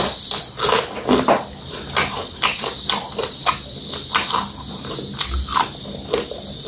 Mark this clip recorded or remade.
recorded